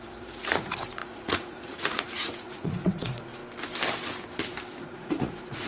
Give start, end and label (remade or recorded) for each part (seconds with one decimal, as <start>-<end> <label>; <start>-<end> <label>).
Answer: 0.0-3.4 remade; 3.4-4.7 recorded; 4.7-5.7 remade

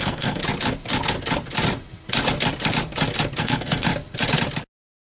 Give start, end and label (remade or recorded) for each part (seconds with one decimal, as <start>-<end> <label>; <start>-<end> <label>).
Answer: 0.0-0.4 remade; 0.4-3.4 recorded; 3.4-3.9 remade; 3.9-5.0 recorded

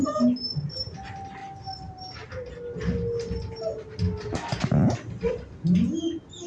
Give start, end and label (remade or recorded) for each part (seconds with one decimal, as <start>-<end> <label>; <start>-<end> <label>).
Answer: 0.0-6.5 recorded

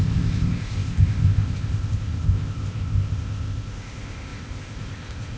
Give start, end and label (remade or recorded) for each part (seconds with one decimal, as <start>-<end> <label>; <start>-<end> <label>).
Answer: 0.0-5.4 remade

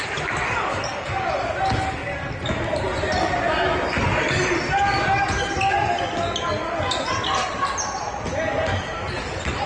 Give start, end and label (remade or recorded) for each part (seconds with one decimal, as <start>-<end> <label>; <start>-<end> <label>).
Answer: 0.0-0.7 recorded; 0.7-1.3 remade; 1.3-9.7 recorded

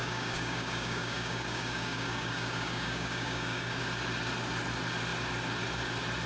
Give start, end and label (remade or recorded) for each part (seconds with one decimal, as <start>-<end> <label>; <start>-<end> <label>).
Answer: 0.0-3.8 remade; 3.8-6.3 recorded

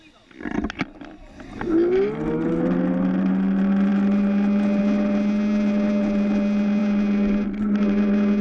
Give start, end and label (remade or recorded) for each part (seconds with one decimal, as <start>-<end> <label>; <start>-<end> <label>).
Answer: 0.0-8.4 recorded